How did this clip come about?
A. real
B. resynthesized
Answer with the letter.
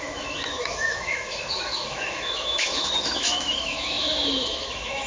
B